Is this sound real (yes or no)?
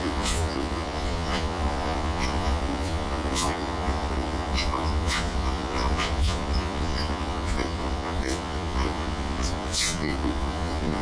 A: no